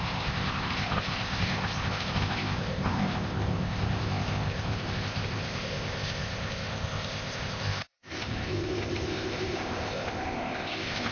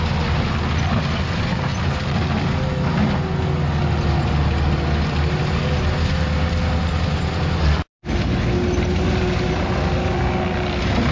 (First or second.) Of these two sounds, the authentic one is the second